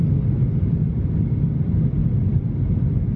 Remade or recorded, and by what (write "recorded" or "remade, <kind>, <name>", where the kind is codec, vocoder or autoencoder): recorded